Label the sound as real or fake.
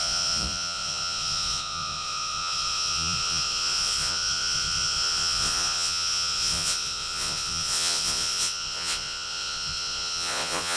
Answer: fake